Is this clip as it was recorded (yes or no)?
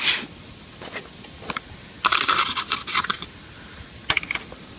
yes